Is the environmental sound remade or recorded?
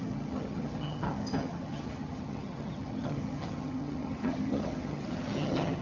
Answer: remade